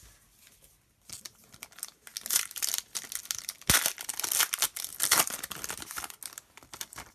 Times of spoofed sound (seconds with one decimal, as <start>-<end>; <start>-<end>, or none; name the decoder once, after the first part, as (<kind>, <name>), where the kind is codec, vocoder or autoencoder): none